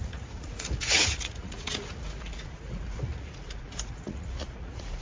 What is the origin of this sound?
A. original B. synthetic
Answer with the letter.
B